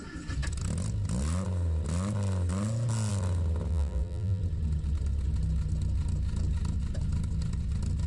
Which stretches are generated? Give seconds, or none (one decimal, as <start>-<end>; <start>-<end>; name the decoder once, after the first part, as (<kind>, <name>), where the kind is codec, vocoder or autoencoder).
3.7-4.4 (vocoder, BigVGAN v2)